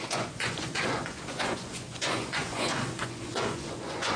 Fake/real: fake